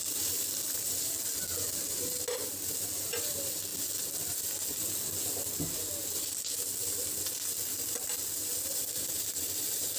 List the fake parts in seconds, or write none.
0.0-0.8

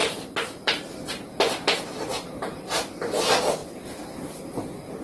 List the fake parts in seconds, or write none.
0.0-0.7; 2.1-2.8

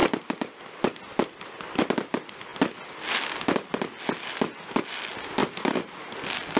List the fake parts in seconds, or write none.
5.4-5.9

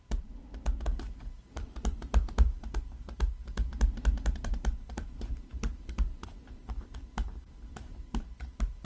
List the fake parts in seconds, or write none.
0.0-0.4; 1.4-8.8